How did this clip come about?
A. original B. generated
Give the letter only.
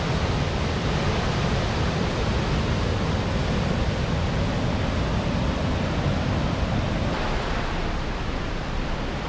A